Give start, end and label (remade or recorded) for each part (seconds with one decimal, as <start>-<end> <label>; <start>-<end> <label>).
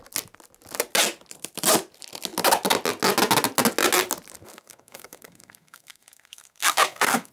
0.0-4.4 recorded; 4.4-7.3 remade